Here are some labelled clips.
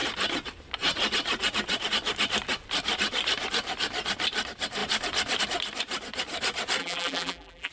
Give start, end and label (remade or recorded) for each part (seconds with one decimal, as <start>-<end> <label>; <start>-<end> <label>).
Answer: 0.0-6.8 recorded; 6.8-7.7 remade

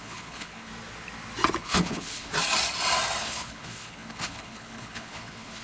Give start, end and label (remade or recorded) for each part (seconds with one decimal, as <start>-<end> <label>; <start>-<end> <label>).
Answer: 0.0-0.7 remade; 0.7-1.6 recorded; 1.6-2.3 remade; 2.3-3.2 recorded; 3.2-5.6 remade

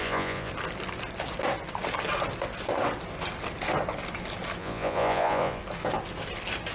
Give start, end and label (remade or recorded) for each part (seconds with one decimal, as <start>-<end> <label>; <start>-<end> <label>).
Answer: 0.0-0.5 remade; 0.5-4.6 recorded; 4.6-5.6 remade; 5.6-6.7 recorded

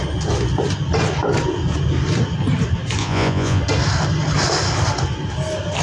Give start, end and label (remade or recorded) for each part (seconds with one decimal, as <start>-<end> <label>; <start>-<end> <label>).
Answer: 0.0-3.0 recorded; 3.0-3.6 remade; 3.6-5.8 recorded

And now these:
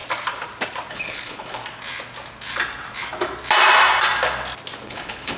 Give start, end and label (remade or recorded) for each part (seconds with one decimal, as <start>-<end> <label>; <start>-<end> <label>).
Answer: 0.0-0.9 recorded; 0.9-1.6 remade; 1.6-4.8 recorded; 4.8-5.4 remade